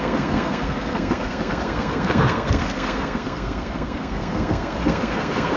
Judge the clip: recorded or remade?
remade